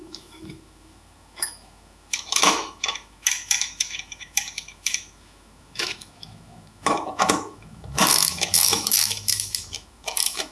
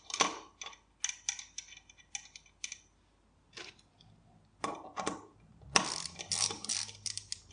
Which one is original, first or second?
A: second